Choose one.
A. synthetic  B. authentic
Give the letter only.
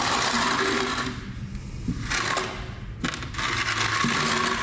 B